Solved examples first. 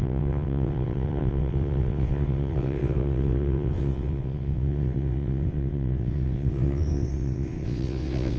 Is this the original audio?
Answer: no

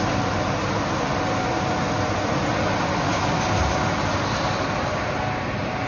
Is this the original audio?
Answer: yes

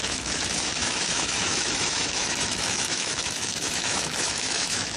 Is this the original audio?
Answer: no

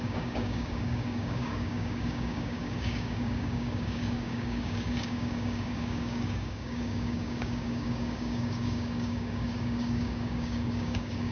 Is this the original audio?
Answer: no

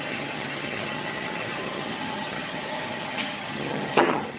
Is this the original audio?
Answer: no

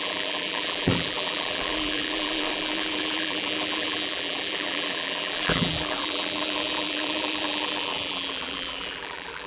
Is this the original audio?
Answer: no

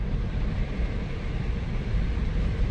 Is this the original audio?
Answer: yes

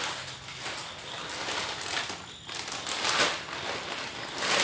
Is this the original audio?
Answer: yes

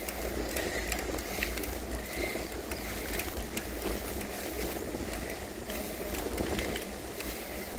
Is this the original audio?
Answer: yes